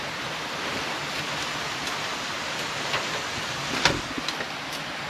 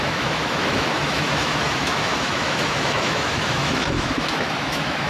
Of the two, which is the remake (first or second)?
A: second